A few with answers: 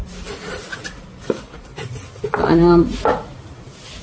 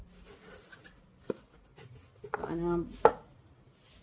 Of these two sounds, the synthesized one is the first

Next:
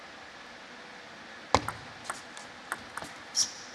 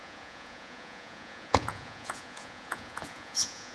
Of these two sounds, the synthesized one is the second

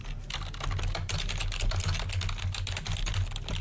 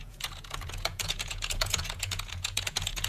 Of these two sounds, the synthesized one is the second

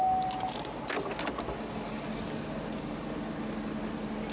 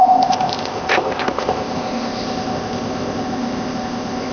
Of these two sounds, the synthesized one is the second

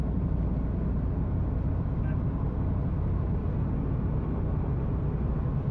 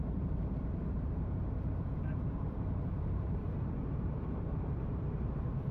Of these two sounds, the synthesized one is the second